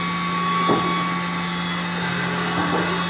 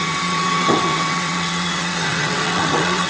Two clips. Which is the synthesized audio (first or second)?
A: second